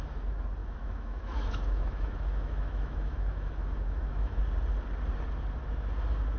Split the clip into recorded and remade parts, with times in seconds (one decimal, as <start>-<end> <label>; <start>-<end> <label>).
0.0-0.6 recorded; 0.6-4.4 remade; 4.4-6.4 recorded